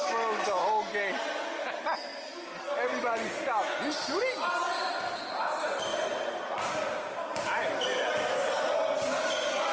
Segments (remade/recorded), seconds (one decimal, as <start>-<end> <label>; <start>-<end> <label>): 0.0-9.7 recorded